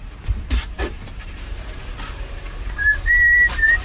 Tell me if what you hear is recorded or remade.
remade